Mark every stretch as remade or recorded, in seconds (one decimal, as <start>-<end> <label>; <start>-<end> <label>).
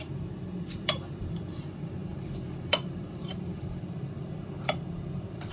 0.0-5.5 remade